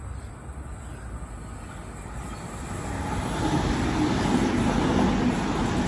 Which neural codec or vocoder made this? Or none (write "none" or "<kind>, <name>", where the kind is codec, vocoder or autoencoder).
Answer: none